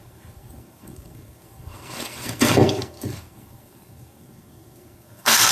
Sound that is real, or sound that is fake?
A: fake